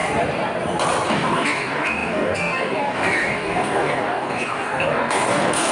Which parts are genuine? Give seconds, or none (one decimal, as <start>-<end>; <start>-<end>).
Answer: 0.0-1.1

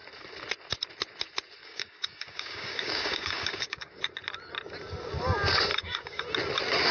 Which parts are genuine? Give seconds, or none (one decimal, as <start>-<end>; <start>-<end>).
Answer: 0.0-1.6; 4.0-5.7; 6.2-6.9

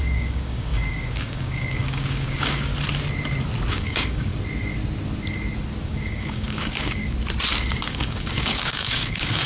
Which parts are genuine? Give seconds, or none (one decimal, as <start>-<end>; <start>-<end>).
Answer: 2.7-3.7; 4.3-5.8; 7.0-7.7

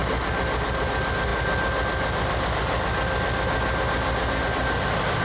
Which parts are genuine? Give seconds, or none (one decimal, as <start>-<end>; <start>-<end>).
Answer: 0.0-5.2

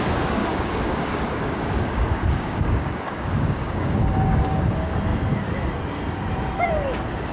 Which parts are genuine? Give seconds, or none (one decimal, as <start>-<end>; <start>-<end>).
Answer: 0.0-0.4; 4.6-7.3

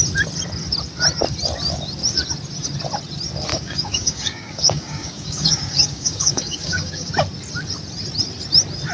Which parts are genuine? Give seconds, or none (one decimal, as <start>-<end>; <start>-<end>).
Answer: 0.0-3.5; 7.1-8.9

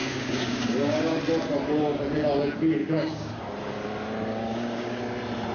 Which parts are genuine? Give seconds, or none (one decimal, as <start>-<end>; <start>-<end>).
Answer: 1.2-2.8; 3.4-4.3; 5.0-5.5